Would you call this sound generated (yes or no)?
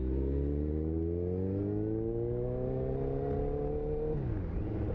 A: no